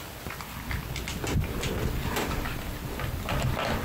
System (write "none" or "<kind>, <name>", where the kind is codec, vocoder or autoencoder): none